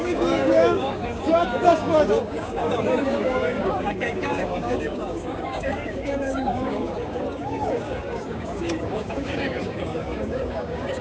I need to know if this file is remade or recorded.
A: remade